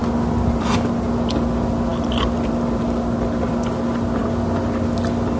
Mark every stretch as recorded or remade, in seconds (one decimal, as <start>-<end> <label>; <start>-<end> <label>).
0.0-5.4 recorded